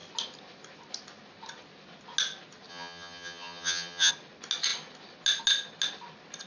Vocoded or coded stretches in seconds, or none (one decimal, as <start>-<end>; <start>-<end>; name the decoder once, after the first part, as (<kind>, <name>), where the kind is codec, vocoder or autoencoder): 2.7-4.1 (vocoder, HiFi-GAN)